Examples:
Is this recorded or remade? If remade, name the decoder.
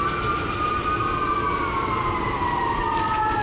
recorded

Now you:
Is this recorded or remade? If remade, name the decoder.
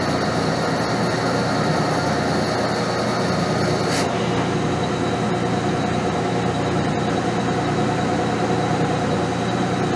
recorded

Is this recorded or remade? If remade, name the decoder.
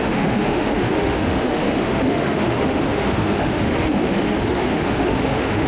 remade, autoencoder, DAC-VAE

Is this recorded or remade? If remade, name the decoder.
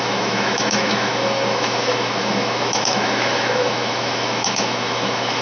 remade, autoencoder, DAC-VAE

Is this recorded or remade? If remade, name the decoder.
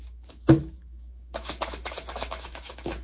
remade, autoencoder, DAC-VAE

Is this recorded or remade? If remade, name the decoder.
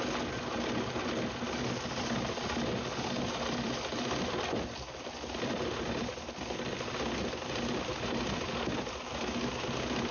recorded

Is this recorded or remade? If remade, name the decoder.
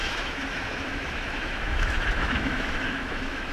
remade, autoencoder, DAC-VAE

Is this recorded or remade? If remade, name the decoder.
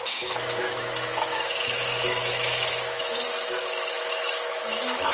remade, autoencoder, DAC-VAE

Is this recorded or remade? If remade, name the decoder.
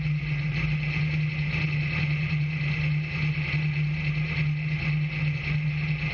recorded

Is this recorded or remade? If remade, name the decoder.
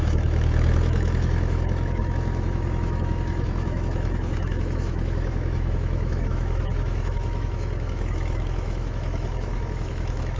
remade, autoencoder, DAC-VAE